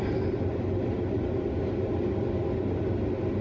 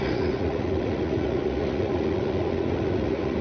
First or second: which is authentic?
first